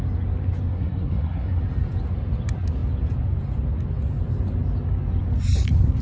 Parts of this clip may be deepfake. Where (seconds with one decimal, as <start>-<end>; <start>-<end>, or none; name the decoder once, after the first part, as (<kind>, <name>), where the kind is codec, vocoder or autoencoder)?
0.7-1.6 (codec, SNAC)